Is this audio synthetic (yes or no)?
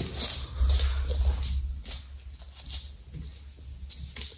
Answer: no